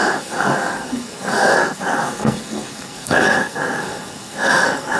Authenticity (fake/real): fake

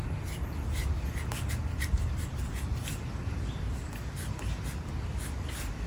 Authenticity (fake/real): real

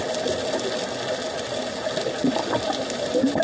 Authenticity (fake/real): real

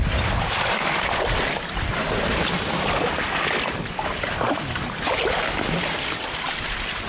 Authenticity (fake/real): real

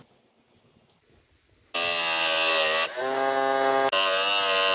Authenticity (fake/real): real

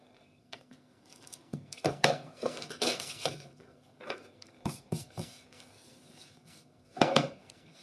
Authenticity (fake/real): fake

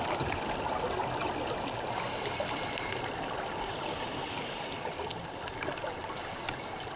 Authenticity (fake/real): real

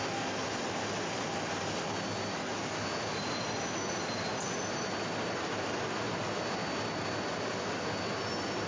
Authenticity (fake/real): real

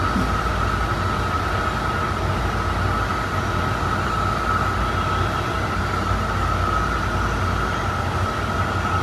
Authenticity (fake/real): real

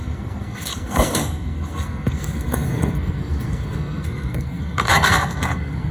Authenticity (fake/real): fake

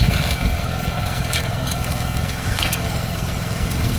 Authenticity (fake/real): fake